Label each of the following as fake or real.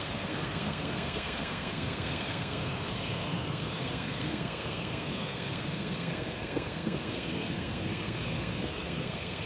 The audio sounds fake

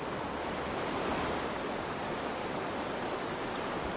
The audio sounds fake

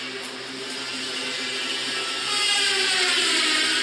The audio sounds fake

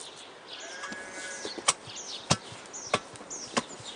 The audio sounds real